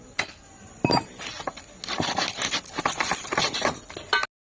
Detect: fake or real real